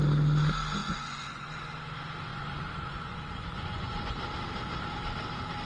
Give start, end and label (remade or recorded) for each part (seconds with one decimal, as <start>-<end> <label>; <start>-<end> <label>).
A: 0.0-0.8 recorded; 0.8-1.5 remade; 1.5-2.3 recorded; 2.3-4.2 remade; 4.2-5.7 recorded